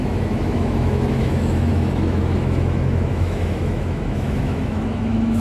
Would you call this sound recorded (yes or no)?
no